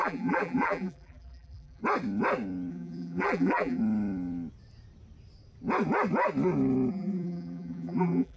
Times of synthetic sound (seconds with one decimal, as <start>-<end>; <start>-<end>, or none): 0.0-1.8; 2.7-3.8; 6.9-8.4